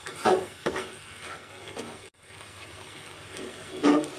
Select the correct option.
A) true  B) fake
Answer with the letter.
B